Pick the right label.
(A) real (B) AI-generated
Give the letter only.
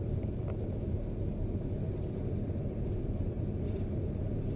A